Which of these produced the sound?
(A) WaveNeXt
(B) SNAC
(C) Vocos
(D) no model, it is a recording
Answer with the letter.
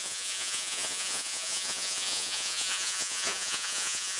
C